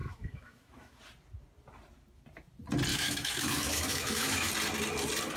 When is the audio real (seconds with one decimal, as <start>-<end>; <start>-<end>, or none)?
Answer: 1.0-2.9; 4.5-5.4